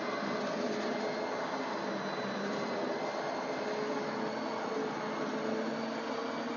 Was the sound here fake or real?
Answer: real